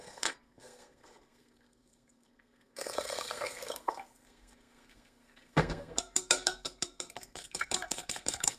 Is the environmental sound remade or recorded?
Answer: remade